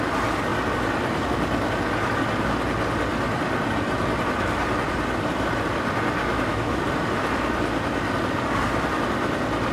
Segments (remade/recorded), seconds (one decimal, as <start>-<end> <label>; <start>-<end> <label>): 0.0-6.2 recorded; 6.2-6.8 remade; 6.8-9.7 recorded